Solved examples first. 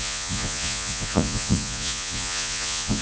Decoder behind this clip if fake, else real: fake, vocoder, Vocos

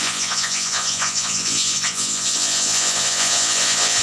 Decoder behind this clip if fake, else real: fake, vocoder, Vocos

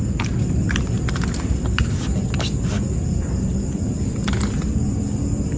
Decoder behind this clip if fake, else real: real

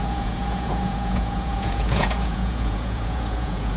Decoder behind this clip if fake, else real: fake, vocoder, Vocos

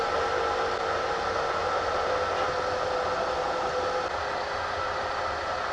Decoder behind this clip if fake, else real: real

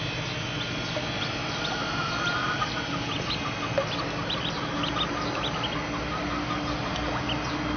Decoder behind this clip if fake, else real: real